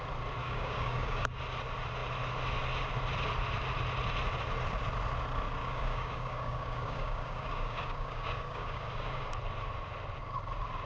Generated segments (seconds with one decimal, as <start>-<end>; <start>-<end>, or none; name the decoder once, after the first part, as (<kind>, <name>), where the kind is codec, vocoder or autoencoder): 0.4-1.4 (codec, DAC); 5.6-9.3